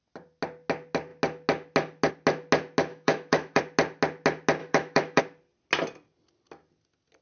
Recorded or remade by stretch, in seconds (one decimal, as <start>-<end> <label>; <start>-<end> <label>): 0.0-2.9 recorded; 2.9-3.6 remade; 3.6-4.6 recorded; 4.6-5.2 remade; 5.2-7.2 recorded